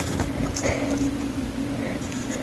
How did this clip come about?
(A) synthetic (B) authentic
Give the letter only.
B